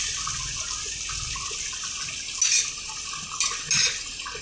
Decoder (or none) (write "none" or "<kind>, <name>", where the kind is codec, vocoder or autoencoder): none